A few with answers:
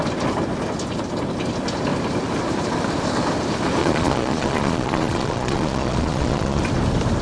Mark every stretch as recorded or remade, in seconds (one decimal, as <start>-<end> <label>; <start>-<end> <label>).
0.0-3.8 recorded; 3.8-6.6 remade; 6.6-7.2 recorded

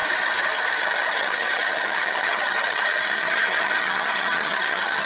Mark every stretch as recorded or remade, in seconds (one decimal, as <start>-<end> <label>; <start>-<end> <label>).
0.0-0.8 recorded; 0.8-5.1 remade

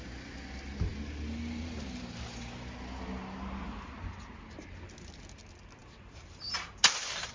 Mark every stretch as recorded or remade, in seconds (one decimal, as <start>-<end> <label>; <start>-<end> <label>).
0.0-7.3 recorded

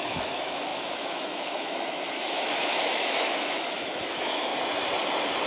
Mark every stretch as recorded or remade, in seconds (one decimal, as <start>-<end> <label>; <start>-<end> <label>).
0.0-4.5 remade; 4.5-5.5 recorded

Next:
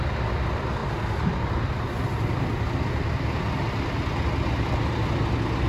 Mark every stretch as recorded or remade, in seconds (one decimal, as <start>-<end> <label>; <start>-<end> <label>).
0.0-5.7 recorded

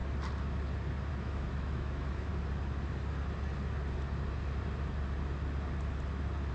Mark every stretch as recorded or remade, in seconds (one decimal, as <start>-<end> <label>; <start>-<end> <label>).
0.0-1.1 recorded; 1.1-2.3 remade; 2.3-6.5 recorded

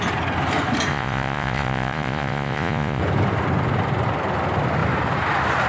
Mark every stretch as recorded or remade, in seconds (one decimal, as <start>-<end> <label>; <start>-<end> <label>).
0.0-0.9 recorded; 0.9-3.0 remade; 3.0-5.7 recorded